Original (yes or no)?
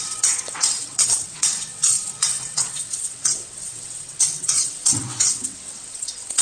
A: no